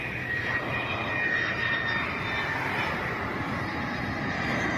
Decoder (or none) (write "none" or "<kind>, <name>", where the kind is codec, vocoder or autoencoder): none